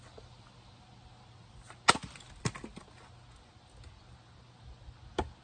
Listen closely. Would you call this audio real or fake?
real